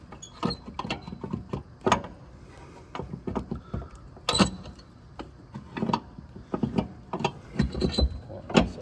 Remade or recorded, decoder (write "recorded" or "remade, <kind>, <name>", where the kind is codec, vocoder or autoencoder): recorded